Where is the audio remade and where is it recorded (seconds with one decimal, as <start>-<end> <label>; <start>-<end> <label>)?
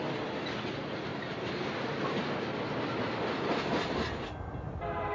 0.0-5.1 recorded